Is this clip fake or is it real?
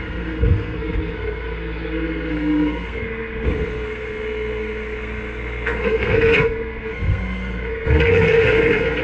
fake